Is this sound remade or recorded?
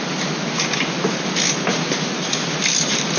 recorded